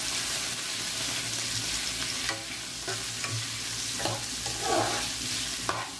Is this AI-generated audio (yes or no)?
no